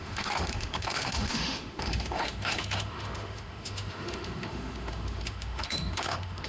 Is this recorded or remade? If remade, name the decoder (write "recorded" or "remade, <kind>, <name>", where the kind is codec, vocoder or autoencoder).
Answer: remade, autoencoder, DAC-VAE